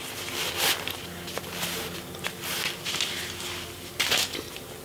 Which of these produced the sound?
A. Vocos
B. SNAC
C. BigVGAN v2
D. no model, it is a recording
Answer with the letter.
D